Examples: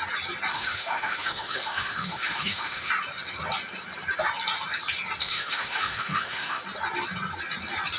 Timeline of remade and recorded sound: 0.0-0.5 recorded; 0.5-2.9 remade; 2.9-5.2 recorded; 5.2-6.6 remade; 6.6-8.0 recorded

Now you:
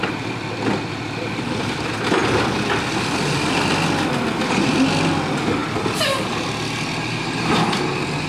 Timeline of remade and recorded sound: 0.0-2.2 remade; 2.2-3.0 recorded; 3.0-5.6 remade; 5.6-8.3 recorded

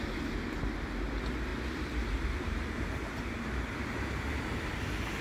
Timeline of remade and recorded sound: 0.0-1.5 recorded; 1.5-4.6 remade; 4.6-5.2 recorded

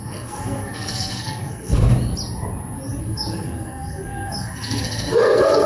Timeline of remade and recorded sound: 0.0-1.8 remade; 1.8-3.0 recorded; 3.0-5.7 remade

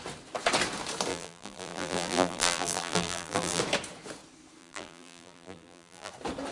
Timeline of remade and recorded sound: 0.0-1.1 recorded; 1.1-3.6 remade; 3.6-4.6 recorded; 4.6-6.1 remade; 6.1-6.5 recorded

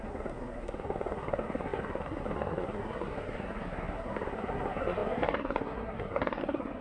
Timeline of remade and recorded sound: 0.0-6.8 remade